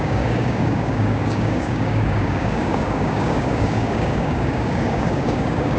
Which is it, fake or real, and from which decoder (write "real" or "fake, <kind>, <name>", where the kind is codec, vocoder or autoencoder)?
fake, codec, DAC